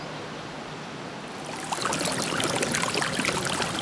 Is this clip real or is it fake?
real